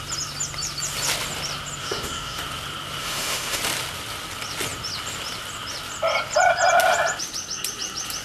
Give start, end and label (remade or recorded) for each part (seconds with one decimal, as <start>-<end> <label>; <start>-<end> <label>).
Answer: 0.0-1.8 recorded; 1.8-2.4 remade; 2.4-3.0 recorded; 3.0-3.6 remade; 3.6-8.2 recorded

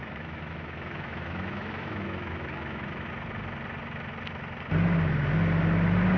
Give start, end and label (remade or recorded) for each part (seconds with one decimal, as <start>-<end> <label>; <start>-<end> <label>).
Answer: 0.0-3.1 remade; 3.1-6.2 recorded

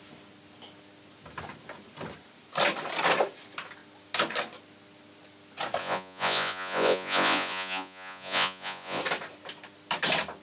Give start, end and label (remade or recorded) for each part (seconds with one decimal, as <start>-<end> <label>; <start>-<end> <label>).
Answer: 0.0-5.8 recorded; 5.8-9.0 remade; 9.0-10.4 recorded

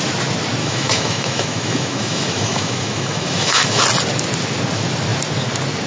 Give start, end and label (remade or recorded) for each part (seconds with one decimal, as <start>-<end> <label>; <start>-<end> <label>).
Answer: 0.0-0.6 recorded; 0.6-3.8 remade; 3.8-5.9 recorded

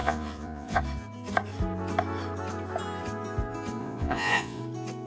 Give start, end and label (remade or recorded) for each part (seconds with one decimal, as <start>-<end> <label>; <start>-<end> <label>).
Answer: 0.0-0.8 remade; 0.8-3.8 recorded; 3.8-4.6 remade; 4.6-5.1 recorded

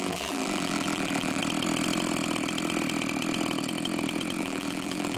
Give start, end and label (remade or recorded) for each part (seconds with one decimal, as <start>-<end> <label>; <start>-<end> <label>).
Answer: 0.0-1.4 remade; 1.4-4.4 recorded; 4.4-5.2 remade

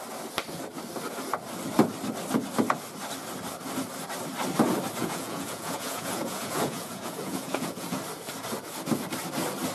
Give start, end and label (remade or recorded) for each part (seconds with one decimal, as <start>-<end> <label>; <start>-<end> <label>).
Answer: 0.0-5.0 recorded; 5.0-8.0 remade; 8.0-9.7 recorded